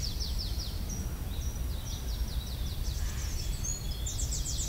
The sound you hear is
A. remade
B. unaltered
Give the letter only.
B